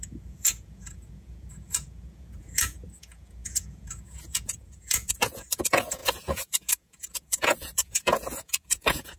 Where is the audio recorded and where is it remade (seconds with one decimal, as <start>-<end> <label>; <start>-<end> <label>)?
0.0-9.2 remade